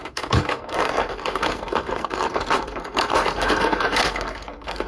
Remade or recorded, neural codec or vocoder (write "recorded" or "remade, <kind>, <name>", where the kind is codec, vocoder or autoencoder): remade, codec, SNAC